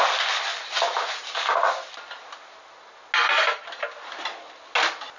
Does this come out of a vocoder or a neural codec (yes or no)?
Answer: no